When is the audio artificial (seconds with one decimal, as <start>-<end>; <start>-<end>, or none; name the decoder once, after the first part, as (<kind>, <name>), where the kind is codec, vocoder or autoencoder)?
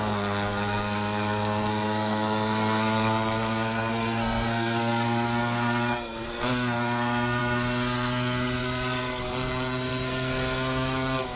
0.0-11.4 (codec, SNAC)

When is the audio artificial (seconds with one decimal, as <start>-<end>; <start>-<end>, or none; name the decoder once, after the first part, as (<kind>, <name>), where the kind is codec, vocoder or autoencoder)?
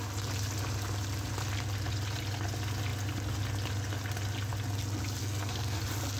5.2-5.8 (codec, SNAC)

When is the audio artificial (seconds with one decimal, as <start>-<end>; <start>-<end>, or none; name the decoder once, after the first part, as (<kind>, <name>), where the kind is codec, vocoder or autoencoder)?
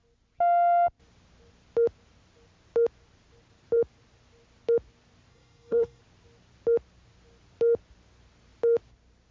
5.3-6.0 (codec, SNAC)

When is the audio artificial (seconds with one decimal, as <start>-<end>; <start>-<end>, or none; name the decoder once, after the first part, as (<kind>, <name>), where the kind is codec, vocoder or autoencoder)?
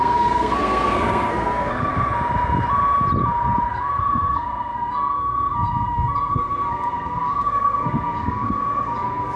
0.0-1.9 (codec, SNAC); 3.7-9.4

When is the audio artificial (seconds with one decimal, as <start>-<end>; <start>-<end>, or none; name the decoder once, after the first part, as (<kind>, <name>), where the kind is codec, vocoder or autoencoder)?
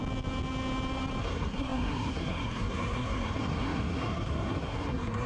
1.2-5.3 (codec, SNAC)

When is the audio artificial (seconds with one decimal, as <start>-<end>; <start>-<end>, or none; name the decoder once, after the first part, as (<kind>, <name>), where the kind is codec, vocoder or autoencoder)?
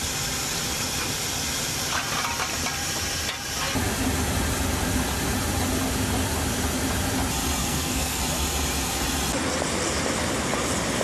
7.6-8.2 (codec, SNAC)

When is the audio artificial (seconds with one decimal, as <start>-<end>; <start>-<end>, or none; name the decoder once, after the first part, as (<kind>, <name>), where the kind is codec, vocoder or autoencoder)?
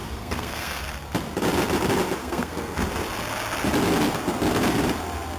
0.0-0.8 (codec, SNAC); 2.2-2.8